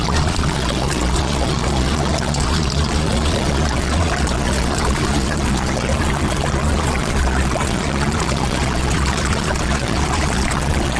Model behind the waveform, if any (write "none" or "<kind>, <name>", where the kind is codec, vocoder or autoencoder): vocoder, Vocos